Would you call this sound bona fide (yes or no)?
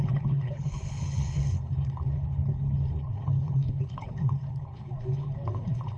no